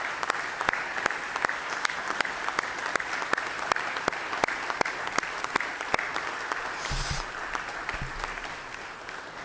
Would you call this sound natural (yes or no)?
yes